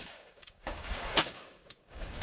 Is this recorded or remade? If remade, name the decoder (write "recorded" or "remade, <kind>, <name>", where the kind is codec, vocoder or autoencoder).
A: remade, codec, DAC